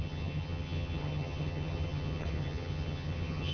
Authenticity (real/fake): fake